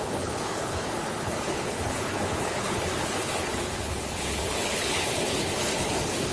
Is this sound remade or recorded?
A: remade